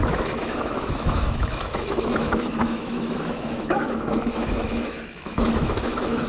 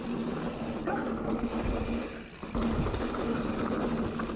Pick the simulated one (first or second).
first